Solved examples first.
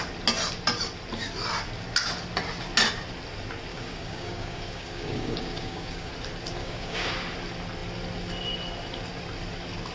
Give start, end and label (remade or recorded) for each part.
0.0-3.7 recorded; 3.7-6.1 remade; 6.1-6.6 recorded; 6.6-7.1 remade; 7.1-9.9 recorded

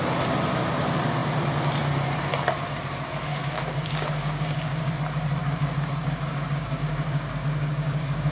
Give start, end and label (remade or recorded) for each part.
0.0-3.3 recorded; 3.3-4.9 remade; 4.9-5.4 recorded; 5.4-8.3 remade

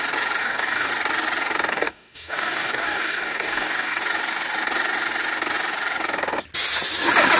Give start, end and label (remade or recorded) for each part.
0.0-0.4 recorded; 0.4-0.9 remade; 0.9-1.7 recorded; 1.7-4.0 remade; 4.0-7.4 recorded

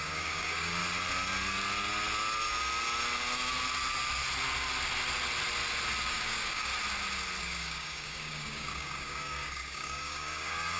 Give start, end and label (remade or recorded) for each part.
0.0-0.8 remade; 0.8-6.1 recorded; 6.1-6.7 remade; 6.7-7.4 recorded; 7.4-10.8 remade

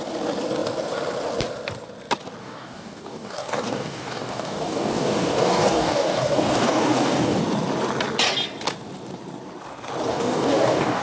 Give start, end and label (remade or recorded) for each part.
0.0-2.4 recorded; 2.4-7.4 remade; 7.4-10.1 recorded; 10.1-11.0 remade

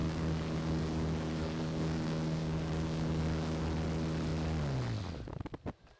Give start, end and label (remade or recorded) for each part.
0.0-3.6 remade; 3.6-6.0 recorded

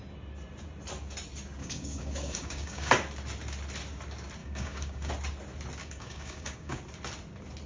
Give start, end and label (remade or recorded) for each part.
0.0-1.6 recorded; 1.6-2.9 remade; 2.9-4.4 recorded; 4.4-5.1 remade; 5.1-5.8 recorded; 5.8-6.8 remade; 6.8-7.7 recorded

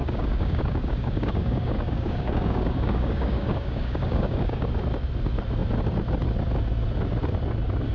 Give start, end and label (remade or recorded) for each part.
0.0-4.7 remade; 4.7-7.9 recorded